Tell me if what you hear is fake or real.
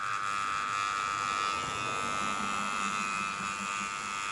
real